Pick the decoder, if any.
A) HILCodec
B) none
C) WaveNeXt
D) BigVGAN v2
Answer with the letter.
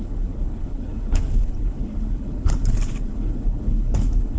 A